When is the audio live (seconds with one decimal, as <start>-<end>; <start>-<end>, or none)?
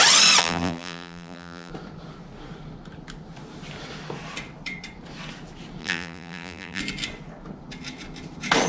0.0-0.4; 1.7-5.8; 6.8-8.7